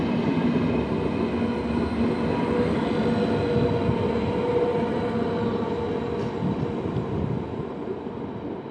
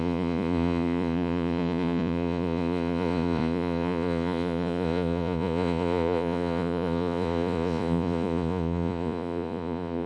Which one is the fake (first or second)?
second